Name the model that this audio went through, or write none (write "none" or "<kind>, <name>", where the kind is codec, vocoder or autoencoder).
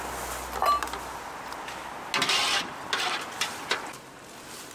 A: none